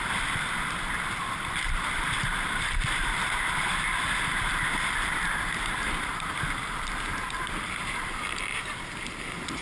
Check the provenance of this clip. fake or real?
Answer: fake